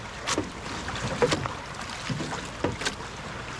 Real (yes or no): yes